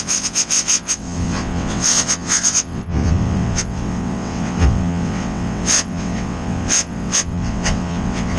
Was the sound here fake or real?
fake